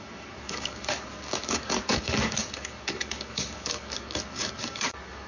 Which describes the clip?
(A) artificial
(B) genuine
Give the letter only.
A